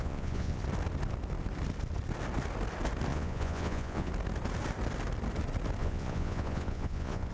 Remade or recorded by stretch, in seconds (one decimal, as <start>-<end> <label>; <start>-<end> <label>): 0.0-0.6 remade; 0.6-3.1 recorded; 3.1-4.1 remade; 4.1-5.8 recorded; 5.8-7.3 remade